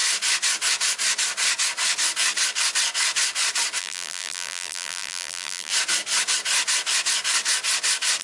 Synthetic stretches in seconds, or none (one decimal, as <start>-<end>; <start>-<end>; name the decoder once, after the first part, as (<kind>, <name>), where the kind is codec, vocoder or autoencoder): 3.8-5.7 (vocoder, BigVGAN v2)